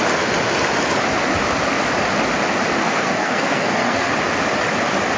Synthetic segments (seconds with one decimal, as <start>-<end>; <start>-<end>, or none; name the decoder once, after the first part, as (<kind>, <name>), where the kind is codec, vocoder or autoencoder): 2.8-4.1 (codec, SNAC)